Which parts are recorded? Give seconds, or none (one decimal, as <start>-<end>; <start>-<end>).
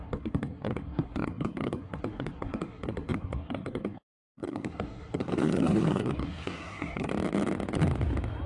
7.1-8.5